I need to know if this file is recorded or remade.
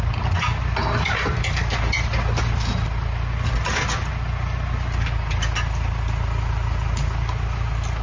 recorded